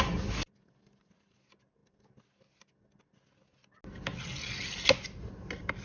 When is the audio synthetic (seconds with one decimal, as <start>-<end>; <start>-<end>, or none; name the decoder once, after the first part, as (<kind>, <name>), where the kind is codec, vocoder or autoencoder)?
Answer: none